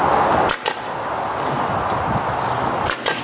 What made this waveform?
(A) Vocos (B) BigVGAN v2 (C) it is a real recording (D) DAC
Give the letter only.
C